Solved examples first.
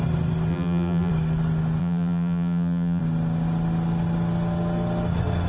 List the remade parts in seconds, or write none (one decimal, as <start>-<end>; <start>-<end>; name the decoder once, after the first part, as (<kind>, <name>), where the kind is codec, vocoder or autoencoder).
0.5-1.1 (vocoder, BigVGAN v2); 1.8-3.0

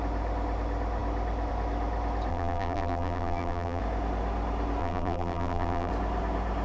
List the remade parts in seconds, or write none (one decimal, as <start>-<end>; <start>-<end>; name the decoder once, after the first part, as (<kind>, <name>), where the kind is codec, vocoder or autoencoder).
2.3-3.8 (vocoder, BigVGAN v2); 4.8-5.9

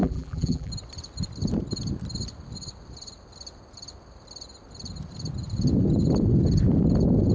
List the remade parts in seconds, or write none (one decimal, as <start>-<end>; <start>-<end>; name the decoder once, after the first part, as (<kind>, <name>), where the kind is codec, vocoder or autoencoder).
0.0-0.7 (vocoder, BigVGAN v2)

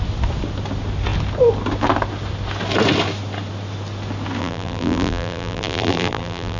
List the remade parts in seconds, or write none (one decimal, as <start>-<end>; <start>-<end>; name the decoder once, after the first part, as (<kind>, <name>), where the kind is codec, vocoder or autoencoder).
4.4-6.6 (vocoder, BigVGAN v2)